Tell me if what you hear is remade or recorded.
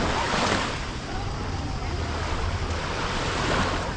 recorded